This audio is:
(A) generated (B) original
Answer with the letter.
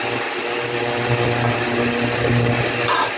B